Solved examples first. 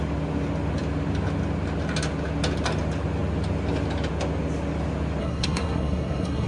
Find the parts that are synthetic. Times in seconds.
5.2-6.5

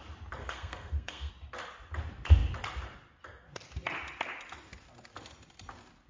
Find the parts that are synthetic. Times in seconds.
0.4-1.3

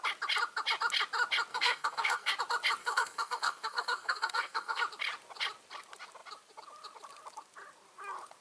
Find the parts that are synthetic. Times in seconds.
1.5-2.3; 2.8-4.8